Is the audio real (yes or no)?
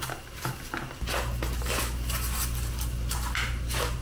yes